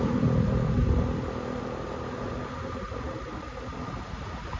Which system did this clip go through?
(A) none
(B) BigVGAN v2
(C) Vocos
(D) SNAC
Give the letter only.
A